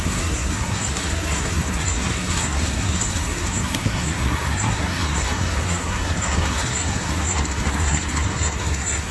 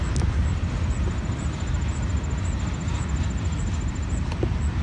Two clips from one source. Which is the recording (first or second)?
second